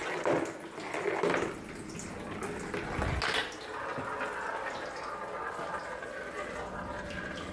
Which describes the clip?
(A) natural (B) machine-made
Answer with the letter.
A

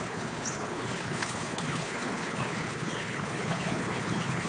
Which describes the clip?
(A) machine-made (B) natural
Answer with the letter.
A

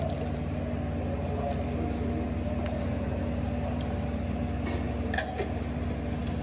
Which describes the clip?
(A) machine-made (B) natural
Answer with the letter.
B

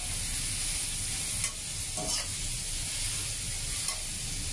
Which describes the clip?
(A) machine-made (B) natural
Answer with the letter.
B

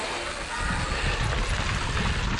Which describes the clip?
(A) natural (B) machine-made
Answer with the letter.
A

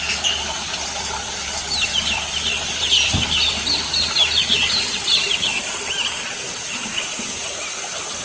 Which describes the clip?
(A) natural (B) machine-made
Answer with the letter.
A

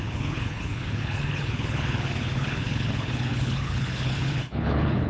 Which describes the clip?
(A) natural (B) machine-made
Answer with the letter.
B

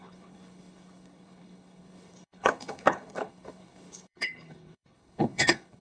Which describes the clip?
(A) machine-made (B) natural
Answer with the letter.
A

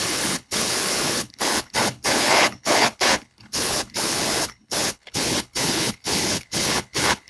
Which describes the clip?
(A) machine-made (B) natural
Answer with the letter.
A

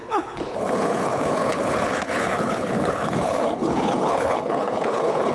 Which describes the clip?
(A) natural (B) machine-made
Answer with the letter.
B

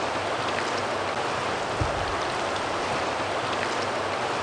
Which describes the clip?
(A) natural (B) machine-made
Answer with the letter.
A